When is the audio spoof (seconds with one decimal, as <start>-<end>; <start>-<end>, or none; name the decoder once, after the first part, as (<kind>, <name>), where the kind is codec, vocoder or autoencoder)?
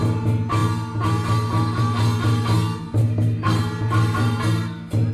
3.0-3.6 (codec, SNAC)